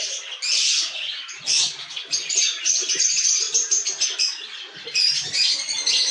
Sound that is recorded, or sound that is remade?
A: recorded